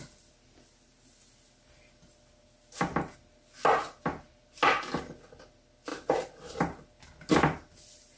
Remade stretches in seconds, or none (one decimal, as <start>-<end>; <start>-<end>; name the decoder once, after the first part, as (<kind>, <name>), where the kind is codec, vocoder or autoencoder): none